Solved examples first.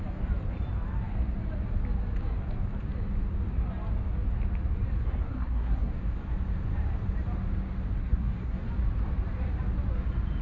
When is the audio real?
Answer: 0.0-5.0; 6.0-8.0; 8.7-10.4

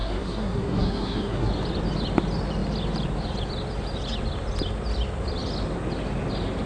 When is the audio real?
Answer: 1.5-6.7

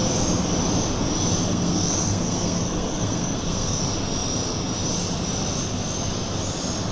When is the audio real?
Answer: 0.0-1.5; 3.8-6.9

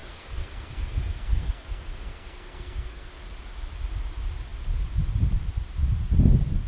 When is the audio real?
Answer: 3.1-6.7

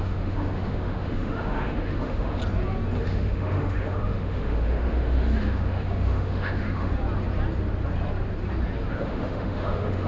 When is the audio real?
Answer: 2.4-3.0; 6.9-8.9

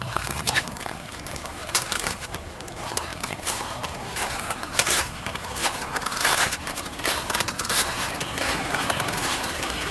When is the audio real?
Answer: none

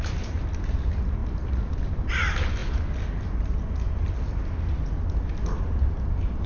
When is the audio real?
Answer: 0.0-6.5

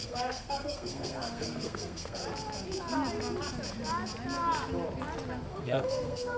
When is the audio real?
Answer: 2.2-5.5